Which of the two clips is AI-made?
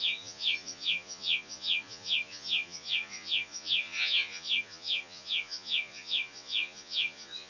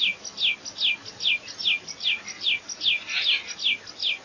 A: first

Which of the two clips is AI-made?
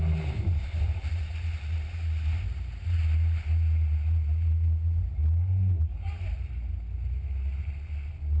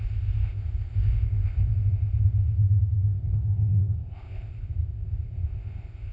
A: second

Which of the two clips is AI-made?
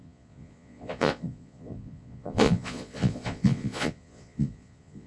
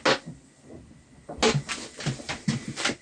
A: first